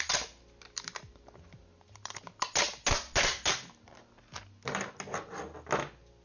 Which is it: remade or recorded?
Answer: recorded